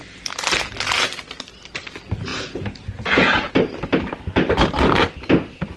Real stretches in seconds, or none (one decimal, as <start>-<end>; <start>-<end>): 0.0-2.3; 3.5-5.8